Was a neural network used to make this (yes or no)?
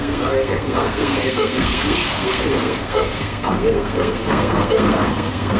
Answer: yes